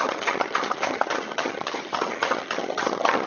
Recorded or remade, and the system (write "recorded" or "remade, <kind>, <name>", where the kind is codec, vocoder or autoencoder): remade, vocoder, HiFi-GAN